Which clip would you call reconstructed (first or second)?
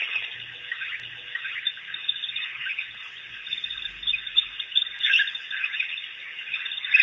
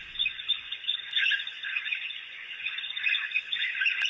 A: second